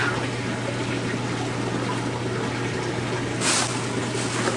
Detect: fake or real real